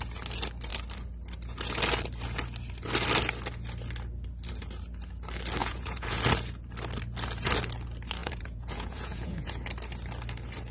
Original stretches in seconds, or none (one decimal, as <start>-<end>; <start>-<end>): 0.0-5.6; 6.2-8.2; 9.5-10.7